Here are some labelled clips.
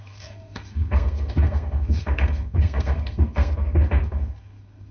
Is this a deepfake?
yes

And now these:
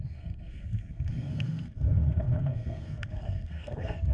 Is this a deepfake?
yes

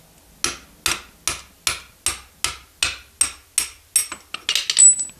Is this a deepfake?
no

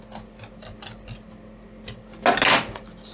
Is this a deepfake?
no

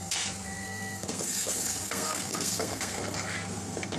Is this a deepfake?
yes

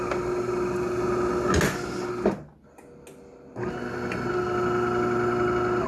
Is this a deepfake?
no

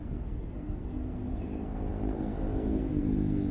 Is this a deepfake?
yes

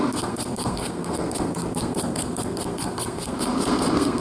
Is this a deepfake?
yes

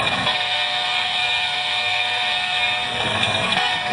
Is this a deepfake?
yes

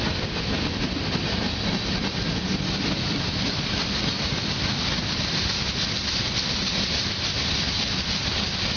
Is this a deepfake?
no